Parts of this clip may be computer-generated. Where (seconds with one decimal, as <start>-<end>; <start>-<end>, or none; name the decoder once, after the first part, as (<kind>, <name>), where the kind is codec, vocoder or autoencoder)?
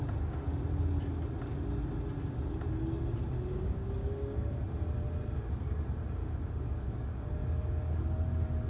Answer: 3.5-4.6 (codec, DAC); 6.2-7.9